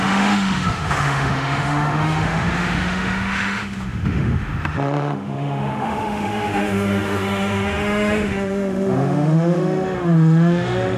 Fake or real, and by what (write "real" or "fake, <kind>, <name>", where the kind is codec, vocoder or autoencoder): fake, autoencoder, DAC-VAE